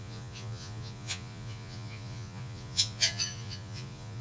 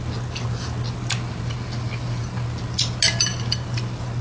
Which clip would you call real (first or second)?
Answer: second